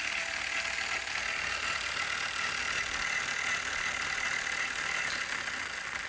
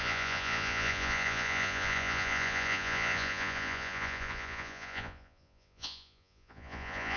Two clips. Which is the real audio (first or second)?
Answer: first